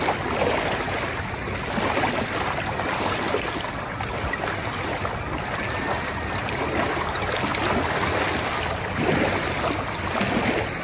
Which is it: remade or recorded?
recorded